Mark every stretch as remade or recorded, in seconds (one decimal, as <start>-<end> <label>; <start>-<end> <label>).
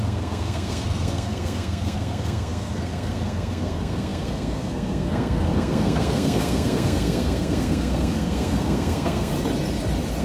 0.0-9.3 remade; 9.3-10.2 recorded